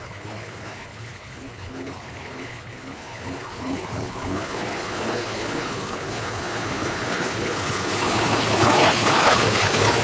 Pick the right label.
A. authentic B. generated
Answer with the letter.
B